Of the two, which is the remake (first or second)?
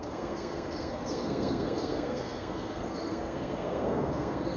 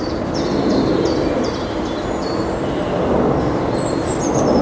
first